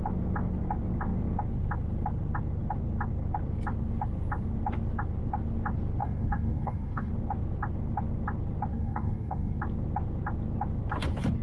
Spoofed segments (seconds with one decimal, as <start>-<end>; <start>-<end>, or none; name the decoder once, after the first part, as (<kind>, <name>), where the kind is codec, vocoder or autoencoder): 6.0-7.1 (codec, DAC); 8.7-9.6